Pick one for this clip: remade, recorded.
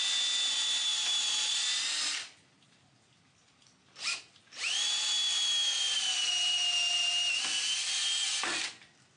recorded